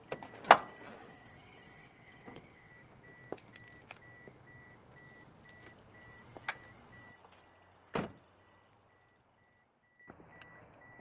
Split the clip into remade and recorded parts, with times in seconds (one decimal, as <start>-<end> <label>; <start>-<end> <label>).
0.0-1.0 recorded; 1.0-2.7 remade; 2.7-11.0 recorded